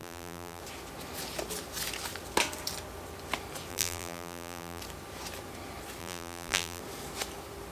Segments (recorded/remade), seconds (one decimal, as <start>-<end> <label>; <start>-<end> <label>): 0.0-0.6 remade; 0.6-3.7 recorded; 3.7-4.8 remade; 4.8-6.0 recorded; 6.0-6.8 remade; 6.8-7.7 recorded